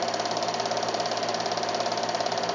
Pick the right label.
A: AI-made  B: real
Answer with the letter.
B